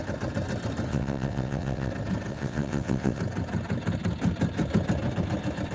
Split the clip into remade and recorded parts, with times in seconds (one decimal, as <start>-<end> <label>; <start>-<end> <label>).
0.0-0.9 recorded; 0.9-1.9 remade; 1.9-2.3 recorded; 2.3-3.2 remade; 3.2-5.7 recorded